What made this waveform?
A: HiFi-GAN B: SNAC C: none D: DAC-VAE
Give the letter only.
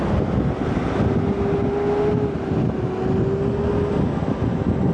C